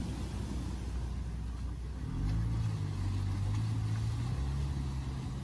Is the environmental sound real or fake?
real